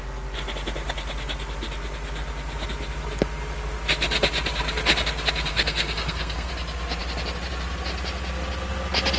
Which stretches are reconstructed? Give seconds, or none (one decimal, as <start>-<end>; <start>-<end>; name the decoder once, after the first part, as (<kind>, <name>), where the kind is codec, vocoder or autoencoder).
5.5-6.5 (codec, SNAC)